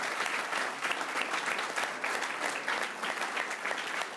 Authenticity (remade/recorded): recorded